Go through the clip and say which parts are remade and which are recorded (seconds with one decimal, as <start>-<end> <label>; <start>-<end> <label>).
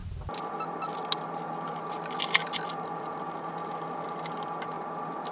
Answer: 0.0-5.3 recorded